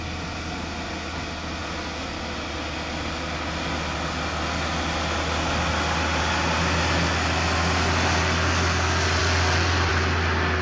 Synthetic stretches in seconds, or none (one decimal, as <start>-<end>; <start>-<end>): none

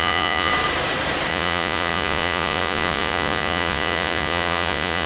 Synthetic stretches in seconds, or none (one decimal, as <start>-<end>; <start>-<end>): 0.0-0.5; 1.3-5.1